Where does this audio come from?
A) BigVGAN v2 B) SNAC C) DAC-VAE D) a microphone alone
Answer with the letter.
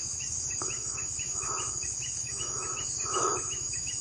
C